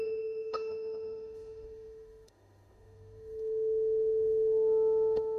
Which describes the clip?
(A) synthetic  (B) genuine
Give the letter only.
A